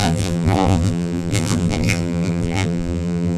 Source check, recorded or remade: remade